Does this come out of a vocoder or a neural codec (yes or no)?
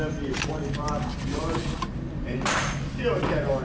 yes